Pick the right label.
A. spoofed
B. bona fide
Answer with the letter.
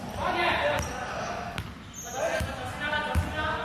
B